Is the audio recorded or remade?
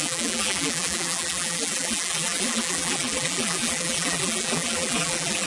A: remade